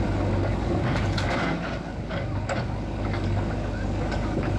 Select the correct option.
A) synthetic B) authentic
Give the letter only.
A